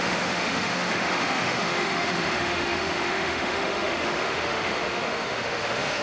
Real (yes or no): no